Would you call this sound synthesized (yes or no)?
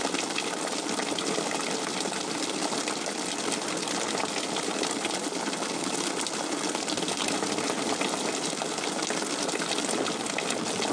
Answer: no